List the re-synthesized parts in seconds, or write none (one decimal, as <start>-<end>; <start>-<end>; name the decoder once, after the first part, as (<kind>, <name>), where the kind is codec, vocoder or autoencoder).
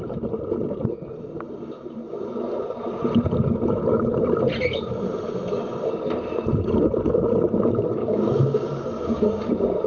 8.0-9.5 (codec, DAC)